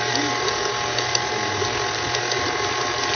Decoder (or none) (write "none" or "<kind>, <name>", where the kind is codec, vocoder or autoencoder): none